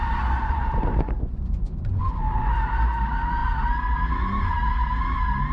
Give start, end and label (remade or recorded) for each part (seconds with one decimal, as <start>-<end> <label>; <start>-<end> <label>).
0.0-0.4 recorded; 0.4-2.7 remade; 2.7-5.5 recorded